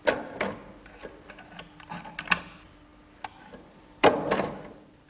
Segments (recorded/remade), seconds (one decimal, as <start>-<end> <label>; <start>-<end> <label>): 0.0-5.1 recorded